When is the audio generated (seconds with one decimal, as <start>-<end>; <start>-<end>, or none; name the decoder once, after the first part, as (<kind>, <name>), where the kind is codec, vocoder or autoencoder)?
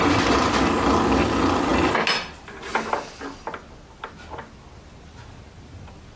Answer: none